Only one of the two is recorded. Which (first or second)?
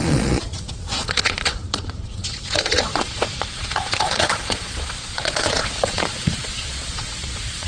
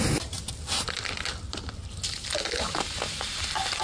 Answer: second